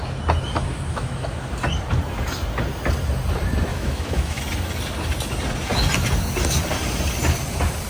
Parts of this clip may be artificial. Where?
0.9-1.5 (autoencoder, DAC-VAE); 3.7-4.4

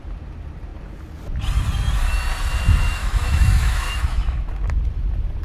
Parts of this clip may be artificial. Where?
3.0-4.5 (autoencoder, DAC-VAE)